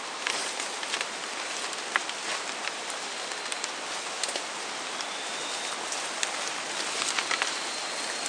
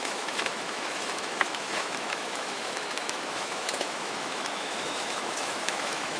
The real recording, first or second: first